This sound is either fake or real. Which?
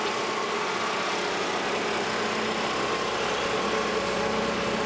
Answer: real